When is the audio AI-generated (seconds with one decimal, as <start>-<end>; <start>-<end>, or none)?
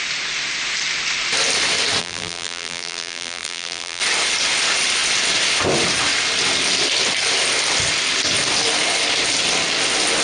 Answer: 2.0-4.0